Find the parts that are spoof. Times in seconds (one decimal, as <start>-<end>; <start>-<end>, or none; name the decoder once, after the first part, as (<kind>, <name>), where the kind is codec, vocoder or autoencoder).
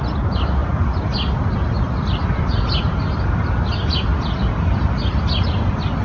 none